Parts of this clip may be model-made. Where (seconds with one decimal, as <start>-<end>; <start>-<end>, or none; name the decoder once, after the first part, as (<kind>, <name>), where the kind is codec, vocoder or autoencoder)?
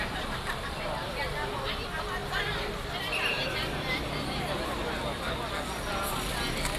none